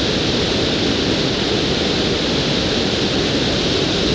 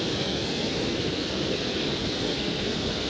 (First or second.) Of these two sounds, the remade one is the second